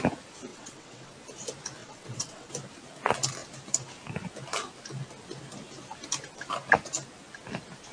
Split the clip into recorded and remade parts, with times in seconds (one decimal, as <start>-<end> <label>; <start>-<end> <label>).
0.0-0.5 recorded; 0.5-1.1 remade; 1.1-1.8 recorded; 1.8-2.5 remade; 2.5-7.9 recorded